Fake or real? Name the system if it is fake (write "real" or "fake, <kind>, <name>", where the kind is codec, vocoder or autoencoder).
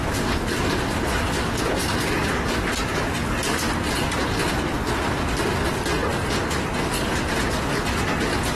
real